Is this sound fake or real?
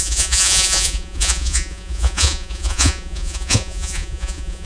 fake